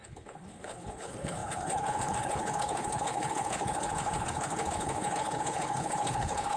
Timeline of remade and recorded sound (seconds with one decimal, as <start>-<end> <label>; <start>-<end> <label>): 0.0-6.6 remade